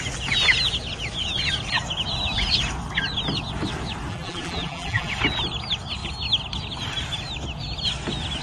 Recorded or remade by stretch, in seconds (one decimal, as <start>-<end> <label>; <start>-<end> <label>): 0.0-4.1 recorded; 4.1-5.1 remade; 5.1-8.4 recorded